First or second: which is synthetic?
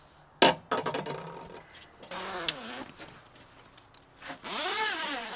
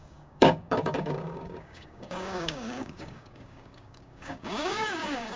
second